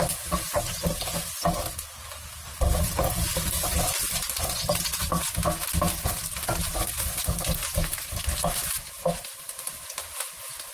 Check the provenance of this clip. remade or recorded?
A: recorded